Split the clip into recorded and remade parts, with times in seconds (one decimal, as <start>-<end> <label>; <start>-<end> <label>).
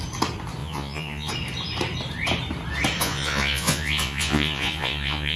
0.0-0.6 recorded; 0.6-1.3 remade; 1.3-3.0 recorded; 3.0-5.4 remade